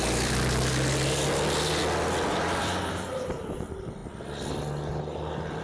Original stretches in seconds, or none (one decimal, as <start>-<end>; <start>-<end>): 1.8-2.3; 4.0-5.0